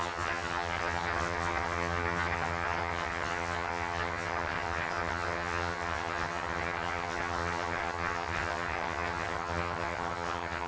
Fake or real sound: fake